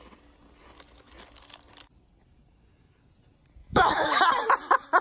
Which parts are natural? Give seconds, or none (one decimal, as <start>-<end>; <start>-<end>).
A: 0.0-3.6; 4.2-5.0